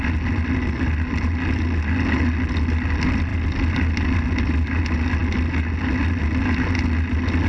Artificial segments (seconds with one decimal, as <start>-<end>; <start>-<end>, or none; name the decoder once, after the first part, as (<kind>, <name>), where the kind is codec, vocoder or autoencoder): none